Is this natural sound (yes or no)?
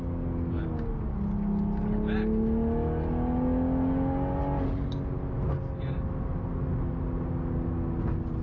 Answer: yes